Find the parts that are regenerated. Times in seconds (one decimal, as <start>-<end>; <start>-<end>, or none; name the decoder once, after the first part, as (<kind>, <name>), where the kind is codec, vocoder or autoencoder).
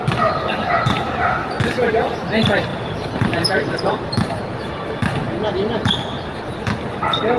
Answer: 2.7-4.4 (vocoder, BigVGAN v2)